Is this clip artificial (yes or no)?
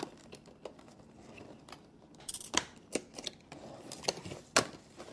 no